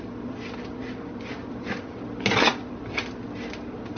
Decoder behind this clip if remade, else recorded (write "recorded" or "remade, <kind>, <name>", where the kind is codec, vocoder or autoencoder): recorded